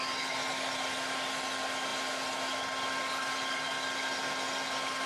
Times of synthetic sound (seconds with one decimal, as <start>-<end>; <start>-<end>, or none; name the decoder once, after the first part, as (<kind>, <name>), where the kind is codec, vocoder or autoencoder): none